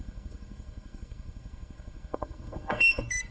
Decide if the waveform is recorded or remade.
remade